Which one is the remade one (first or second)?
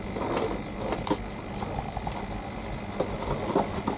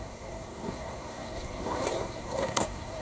second